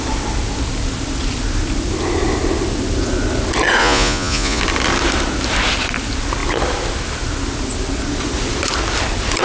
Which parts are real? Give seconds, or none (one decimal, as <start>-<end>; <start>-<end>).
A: 0.0-3.8; 4.6-9.4